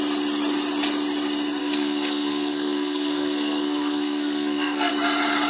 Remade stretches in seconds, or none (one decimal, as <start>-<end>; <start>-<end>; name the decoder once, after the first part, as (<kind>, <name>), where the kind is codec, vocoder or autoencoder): 1.6-4.9 (codec, SNAC)